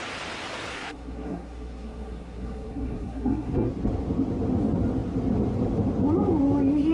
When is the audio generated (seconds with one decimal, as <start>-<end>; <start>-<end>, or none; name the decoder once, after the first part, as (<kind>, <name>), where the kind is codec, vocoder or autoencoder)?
0.7-3.7 (codec, SNAC)